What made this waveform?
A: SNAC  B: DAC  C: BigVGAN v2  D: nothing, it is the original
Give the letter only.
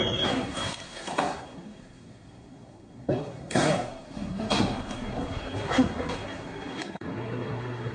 A